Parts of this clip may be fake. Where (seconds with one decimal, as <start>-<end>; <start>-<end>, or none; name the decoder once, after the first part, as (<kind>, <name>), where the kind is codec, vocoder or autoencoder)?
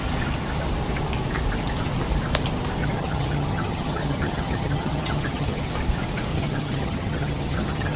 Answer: 2.8-5.7 (vocoder, HiFi-GAN); 6.3-8.0